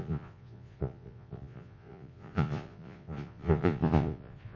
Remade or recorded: remade